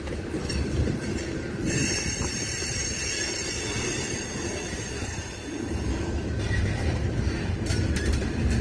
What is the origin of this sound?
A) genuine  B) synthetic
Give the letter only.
B